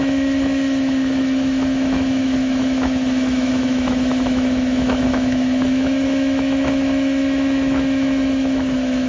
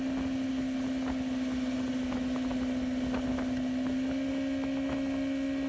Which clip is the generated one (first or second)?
first